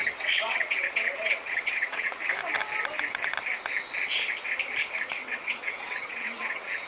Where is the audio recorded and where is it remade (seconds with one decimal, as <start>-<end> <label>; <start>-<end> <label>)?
0.0-2.2 remade; 2.2-5.1 recorded; 5.1-6.9 remade